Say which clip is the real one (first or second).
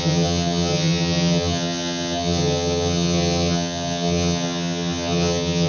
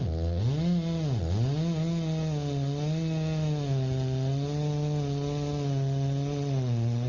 second